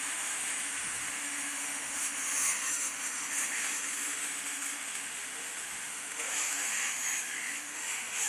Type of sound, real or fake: fake